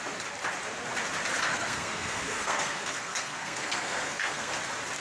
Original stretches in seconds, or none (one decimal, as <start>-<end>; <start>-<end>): 0.0-1.5; 4.5-5.0